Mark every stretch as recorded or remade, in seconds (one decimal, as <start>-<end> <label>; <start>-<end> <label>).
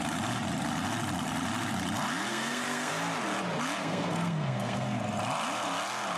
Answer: 0.0-2.3 recorded; 2.3-2.9 remade; 2.9-3.8 recorded; 3.8-5.0 remade; 5.0-6.2 recorded